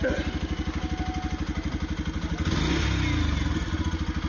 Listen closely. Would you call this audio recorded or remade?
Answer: recorded